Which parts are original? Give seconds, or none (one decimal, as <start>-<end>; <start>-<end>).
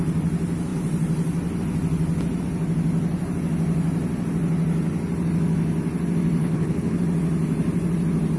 0.0-6.4; 7.0-8.4